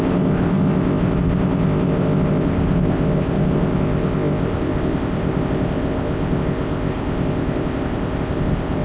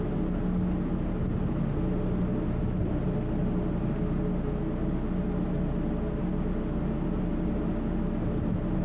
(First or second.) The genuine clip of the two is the second